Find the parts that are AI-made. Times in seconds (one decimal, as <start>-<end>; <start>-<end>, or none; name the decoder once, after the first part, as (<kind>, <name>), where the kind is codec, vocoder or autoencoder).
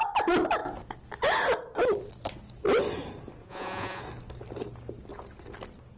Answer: 3.4-4.0 (vocoder, Vocos)